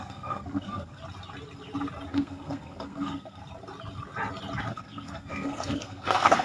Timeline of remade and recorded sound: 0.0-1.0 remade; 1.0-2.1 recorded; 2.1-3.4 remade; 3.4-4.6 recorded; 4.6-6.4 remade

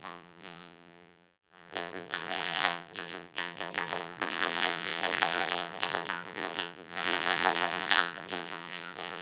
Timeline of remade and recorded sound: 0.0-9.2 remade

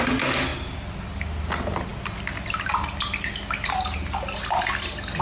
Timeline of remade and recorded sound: 0.0-5.2 recorded

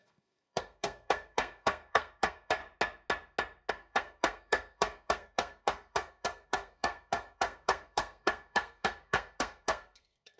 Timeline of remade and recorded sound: 0.0-2.6 remade; 2.6-3.7 recorded; 3.7-10.4 remade

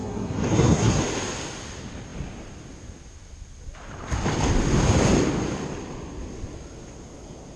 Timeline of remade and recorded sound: 0.0-1.0 remade; 1.0-7.6 recorded

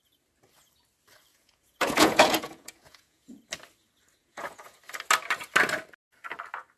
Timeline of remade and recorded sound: 0.0-1.3 recorded; 1.3-3.4 remade; 3.4-4.2 recorded; 4.2-4.8 remade; 4.8-6.8 recorded